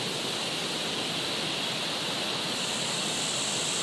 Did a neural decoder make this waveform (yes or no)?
no